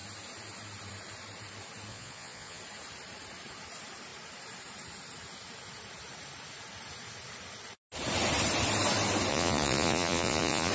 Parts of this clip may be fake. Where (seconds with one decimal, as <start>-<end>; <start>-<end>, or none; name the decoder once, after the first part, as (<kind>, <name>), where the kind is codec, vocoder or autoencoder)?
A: 1.9-2.6 (vocoder, Vocos); 9.3-10.7